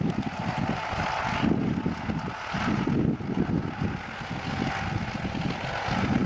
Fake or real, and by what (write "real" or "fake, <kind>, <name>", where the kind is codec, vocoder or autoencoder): real